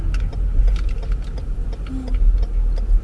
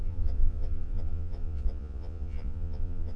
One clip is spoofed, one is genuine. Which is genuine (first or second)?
first